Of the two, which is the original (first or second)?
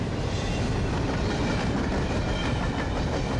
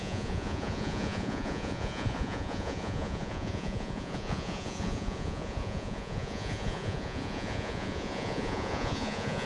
first